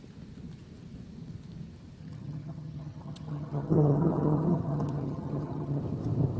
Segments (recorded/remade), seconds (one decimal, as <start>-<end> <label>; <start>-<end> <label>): 0.0-2.0 recorded; 2.0-5.8 remade; 5.8-6.4 recorded

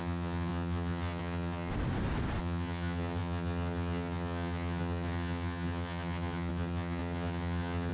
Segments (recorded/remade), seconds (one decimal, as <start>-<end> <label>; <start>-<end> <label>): 0.0-1.7 remade; 1.7-2.4 recorded; 2.4-7.9 remade

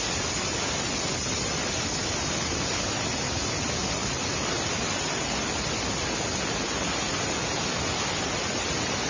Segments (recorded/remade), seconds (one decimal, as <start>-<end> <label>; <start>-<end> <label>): 0.0-9.1 recorded

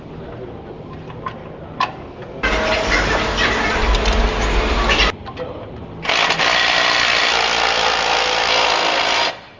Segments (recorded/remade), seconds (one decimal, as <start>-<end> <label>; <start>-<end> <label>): 0.0-9.6 recorded

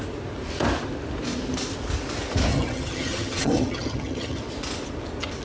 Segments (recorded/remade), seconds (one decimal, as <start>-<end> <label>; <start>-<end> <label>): 0.0-2.5 recorded; 2.5-4.4 remade; 4.4-5.4 recorded

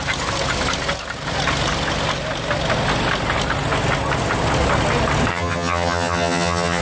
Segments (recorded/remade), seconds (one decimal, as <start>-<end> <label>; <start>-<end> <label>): 0.0-5.3 recorded; 5.3-6.8 remade

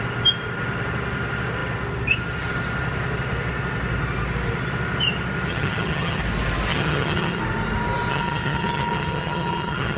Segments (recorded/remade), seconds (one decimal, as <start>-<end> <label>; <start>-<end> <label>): 0.0-5.5 recorded; 5.5-6.2 remade; 6.2-6.7 recorded; 6.7-7.4 remade; 7.4-8.1 recorded; 8.1-10.0 remade